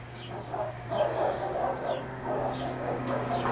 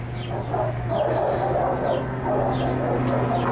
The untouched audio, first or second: second